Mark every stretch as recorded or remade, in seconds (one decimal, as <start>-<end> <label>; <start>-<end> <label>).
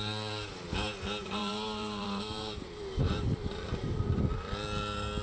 0.0-1.4 recorded; 1.4-4.0 remade; 4.0-5.2 recorded